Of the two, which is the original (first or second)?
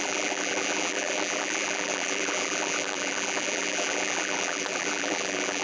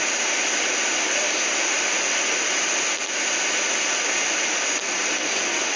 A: second